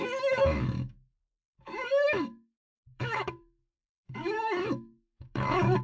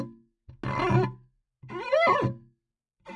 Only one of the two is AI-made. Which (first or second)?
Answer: first